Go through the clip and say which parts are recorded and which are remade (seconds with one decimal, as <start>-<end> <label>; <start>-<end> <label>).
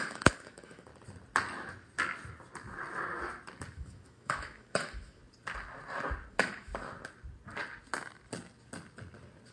0.0-0.9 remade; 0.9-3.7 recorded; 3.7-5.2 remade; 5.2-6.3 recorded; 6.3-6.7 remade; 6.7-9.5 recorded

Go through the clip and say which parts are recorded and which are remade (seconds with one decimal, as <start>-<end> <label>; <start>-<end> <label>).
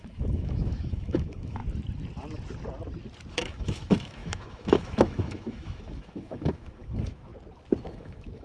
0.0-1.6 remade; 1.6-3.3 recorded; 3.3-7.3 remade; 7.3-7.9 recorded; 7.9-8.4 remade